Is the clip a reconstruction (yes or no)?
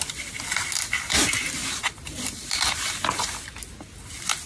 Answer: no